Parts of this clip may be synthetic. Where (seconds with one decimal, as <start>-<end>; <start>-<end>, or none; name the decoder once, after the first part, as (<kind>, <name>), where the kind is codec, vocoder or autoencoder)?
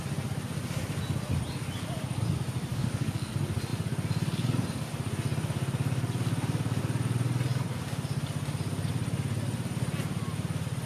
2.7-3.3 (codec, DAC)